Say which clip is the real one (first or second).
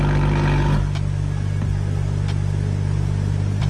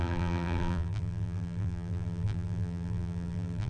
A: first